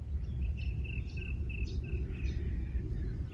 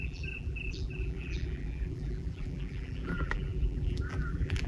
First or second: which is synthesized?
second